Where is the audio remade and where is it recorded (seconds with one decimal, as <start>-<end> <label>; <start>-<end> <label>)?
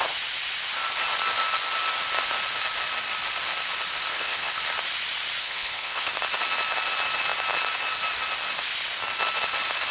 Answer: 0.0-4.1 recorded; 4.1-4.6 remade; 4.6-5.4 recorded; 5.4-6.1 remade; 6.1-9.9 recorded